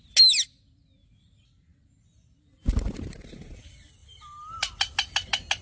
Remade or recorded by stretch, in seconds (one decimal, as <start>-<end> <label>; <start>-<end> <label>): 0.0-5.6 recorded